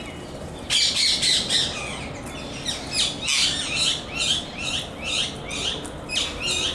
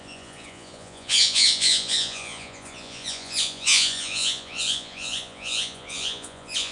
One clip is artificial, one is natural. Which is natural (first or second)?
first